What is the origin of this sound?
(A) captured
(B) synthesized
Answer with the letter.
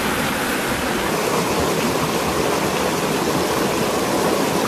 A